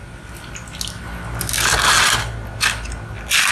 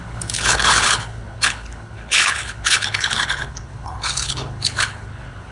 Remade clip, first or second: second